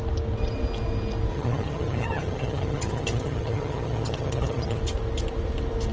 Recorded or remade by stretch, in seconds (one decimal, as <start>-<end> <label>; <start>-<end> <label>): 0.0-1.3 recorded; 1.3-4.8 remade; 4.8-5.9 recorded